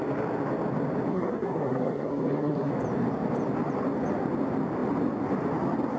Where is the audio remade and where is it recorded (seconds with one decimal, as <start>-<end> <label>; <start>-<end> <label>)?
0.0-1.1 recorded; 1.1-2.7 remade; 2.7-6.0 recorded